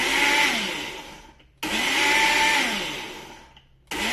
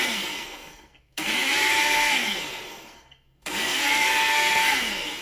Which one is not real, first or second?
second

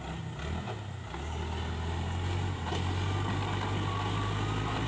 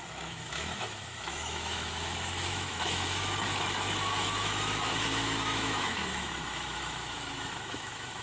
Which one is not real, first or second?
second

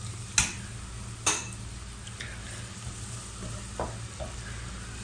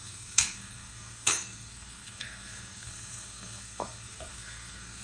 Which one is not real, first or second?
second